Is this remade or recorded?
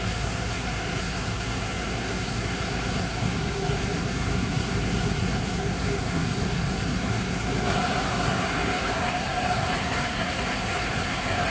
remade